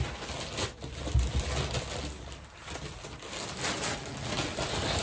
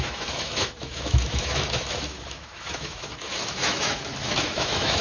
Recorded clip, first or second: first